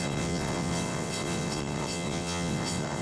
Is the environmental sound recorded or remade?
remade